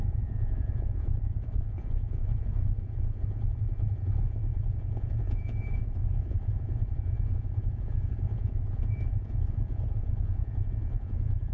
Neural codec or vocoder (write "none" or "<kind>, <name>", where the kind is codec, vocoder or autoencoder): vocoder, Vocos